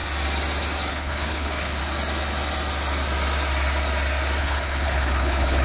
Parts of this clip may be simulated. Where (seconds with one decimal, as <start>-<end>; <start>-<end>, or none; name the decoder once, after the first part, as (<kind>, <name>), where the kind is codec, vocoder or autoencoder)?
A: 0.9-1.8 (codec, HILCodec); 4.4-5.6